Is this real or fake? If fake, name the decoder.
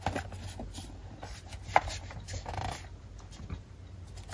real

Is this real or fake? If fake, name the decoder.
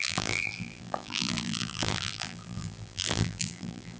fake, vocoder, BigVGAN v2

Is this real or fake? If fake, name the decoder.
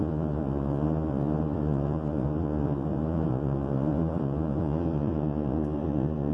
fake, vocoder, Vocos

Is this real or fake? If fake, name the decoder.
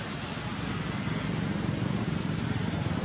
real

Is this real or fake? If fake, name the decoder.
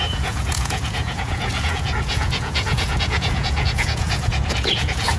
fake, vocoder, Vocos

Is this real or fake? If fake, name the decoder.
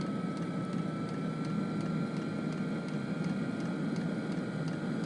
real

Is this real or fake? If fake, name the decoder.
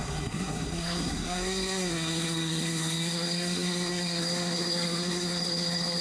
fake, codec, SNAC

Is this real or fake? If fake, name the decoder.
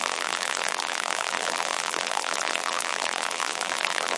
fake, vocoder, BigVGAN v2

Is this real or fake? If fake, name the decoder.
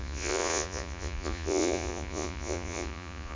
fake, vocoder, Vocos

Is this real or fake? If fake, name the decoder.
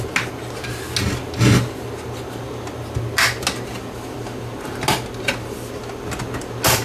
real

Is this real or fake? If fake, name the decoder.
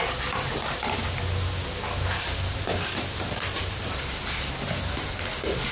real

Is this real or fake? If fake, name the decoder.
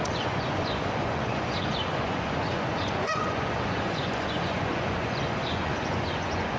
fake, vocoder, Vocos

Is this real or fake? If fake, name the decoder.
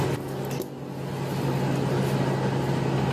real